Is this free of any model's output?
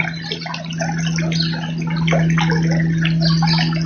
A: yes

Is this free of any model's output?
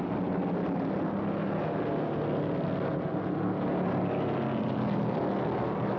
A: yes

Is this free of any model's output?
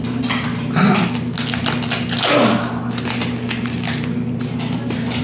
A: yes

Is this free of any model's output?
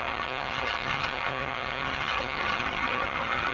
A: no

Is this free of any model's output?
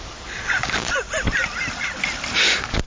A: yes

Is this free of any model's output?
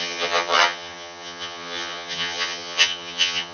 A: no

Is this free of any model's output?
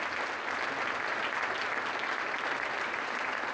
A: yes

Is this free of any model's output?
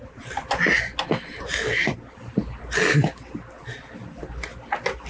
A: yes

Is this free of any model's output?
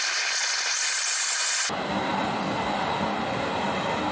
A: yes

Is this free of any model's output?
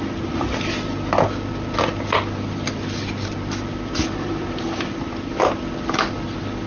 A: yes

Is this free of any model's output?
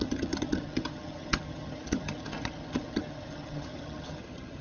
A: no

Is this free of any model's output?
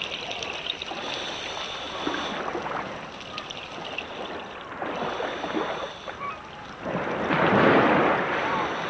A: yes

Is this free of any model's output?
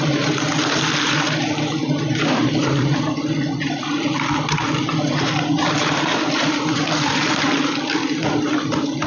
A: yes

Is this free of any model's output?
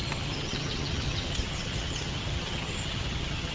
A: no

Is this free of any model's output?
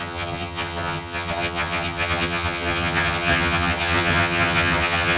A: no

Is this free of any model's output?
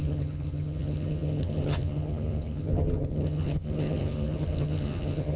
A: no